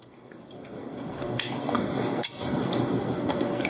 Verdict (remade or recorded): remade